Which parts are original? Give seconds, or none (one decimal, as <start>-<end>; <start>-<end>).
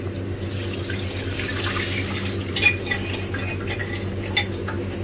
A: 0.0-5.0